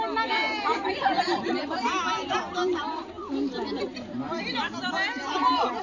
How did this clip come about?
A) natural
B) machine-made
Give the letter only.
A